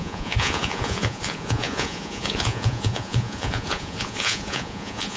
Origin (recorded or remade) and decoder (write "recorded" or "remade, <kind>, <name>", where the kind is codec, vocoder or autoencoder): remade, vocoder, Vocos